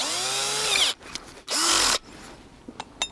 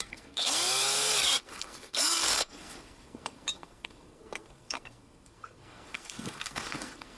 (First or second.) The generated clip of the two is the second